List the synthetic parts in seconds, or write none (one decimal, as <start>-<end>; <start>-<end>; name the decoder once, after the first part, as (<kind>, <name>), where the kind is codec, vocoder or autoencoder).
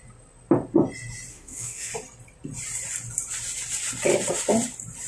1.3-1.9 (autoencoder, DAC-VAE)